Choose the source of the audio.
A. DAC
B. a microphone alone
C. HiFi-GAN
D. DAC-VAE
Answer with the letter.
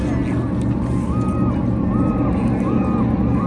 B